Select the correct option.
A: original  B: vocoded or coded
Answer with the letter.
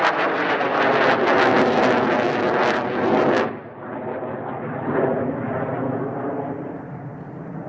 A